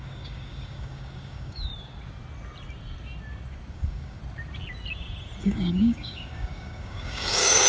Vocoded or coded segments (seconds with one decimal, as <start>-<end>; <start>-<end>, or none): 0.0-1.7; 3.7-4.2; 5.4-7.7